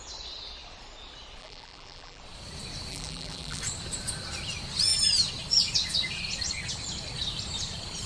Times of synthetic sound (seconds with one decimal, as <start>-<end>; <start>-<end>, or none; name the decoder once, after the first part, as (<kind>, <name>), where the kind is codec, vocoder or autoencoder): 1.4-2.2 (vocoder, BigVGAN v2); 2.9-3.6

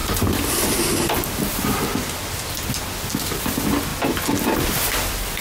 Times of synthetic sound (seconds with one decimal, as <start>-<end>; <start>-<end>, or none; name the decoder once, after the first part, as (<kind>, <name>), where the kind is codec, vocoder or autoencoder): none

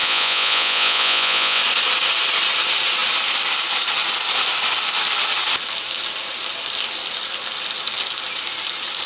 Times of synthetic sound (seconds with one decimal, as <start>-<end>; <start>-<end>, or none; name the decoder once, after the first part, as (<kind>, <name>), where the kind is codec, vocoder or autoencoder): 0.0-1.6 (vocoder, Vocos)

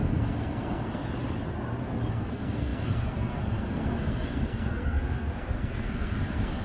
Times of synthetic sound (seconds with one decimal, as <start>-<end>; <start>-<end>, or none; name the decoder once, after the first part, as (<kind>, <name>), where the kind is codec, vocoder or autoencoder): 0.0-1.0 (codec, SNAC); 2.1-6.6

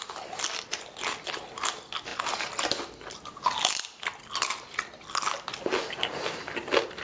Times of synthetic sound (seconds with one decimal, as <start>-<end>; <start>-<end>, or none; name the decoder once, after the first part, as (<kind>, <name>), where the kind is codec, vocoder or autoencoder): none

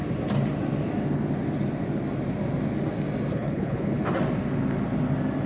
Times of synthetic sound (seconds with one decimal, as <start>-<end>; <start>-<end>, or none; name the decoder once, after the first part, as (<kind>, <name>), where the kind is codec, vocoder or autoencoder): 3.3-4.0 (codec, HILCodec)

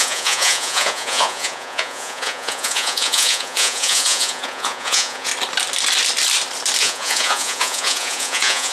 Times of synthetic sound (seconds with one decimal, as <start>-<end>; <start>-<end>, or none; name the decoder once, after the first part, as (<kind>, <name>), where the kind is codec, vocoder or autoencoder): 0.0-5.3 (vocoder, Vocos); 6.8-8.7

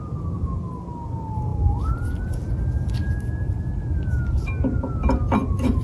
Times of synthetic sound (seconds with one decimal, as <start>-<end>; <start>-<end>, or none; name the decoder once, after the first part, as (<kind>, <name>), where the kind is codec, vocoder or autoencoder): none